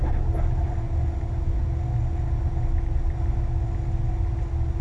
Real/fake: real